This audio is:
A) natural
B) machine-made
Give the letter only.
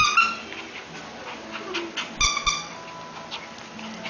A